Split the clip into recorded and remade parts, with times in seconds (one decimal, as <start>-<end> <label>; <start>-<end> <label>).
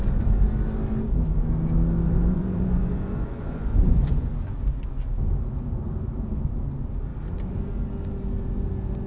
0.0-2.0 recorded; 2.0-4.3 remade; 4.3-9.1 recorded